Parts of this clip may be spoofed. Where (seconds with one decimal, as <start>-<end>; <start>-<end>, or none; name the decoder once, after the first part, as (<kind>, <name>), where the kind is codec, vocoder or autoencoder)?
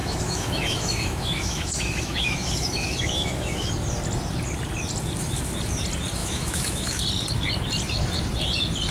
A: 0.0-3.7 (autoencoder, DAC-VAE); 6.2-7.0